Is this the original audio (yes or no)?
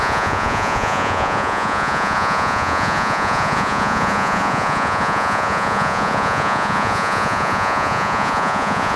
no